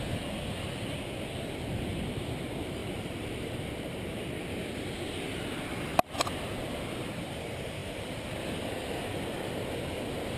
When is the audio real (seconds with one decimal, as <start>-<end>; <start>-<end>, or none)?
0.0-2.8; 4.4-10.4